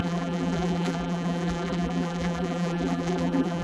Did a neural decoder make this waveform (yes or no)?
yes